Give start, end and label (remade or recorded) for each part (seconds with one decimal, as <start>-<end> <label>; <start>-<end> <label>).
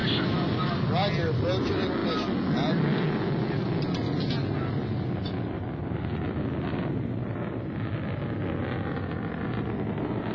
0.0-10.3 recorded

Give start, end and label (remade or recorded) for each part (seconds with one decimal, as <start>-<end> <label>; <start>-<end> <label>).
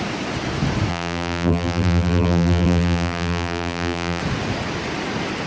0.0-0.9 recorded; 0.9-4.2 remade; 4.2-5.5 recorded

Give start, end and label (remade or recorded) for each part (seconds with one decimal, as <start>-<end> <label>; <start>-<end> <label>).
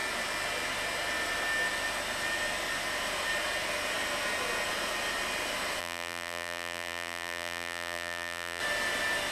0.0-5.8 recorded; 5.8-8.6 remade; 8.6-9.3 recorded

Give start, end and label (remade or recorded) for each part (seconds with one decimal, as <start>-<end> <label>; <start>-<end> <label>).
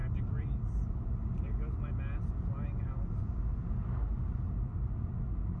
0.0-1.1 remade; 1.1-4.1 recorded; 4.1-5.1 remade; 5.1-5.6 recorded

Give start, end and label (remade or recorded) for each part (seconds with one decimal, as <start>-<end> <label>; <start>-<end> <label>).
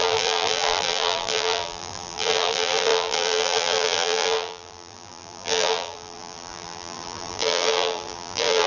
0.0-8.7 remade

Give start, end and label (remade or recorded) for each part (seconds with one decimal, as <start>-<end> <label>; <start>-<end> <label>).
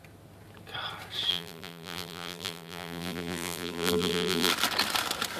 0.0-1.3 recorded; 1.3-4.5 remade; 4.5-5.4 recorded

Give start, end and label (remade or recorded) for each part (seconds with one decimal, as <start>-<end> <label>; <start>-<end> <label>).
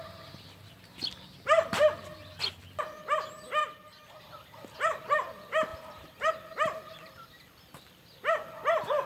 0.0-3.6 recorded; 3.6-4.2 remade; 4.2-5.7 recorded; 5.7-6.3 remade; 6.3-9.1 recorded